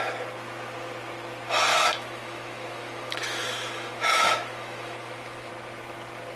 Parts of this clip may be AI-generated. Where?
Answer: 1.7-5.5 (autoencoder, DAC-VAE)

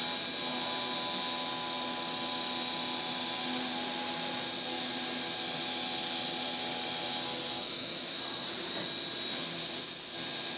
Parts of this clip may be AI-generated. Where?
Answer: 7.5-8.2 (autoencoder, DAC-VAE)